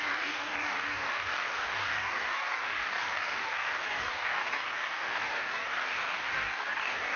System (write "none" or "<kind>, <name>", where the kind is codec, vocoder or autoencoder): codec, DAC